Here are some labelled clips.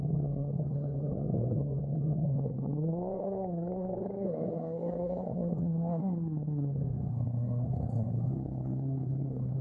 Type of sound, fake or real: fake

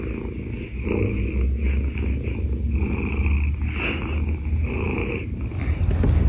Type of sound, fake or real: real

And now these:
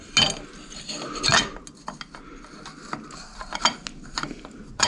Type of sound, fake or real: real